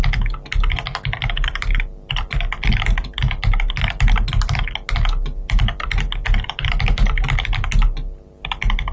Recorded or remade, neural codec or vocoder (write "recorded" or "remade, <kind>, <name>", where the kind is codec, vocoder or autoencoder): recorded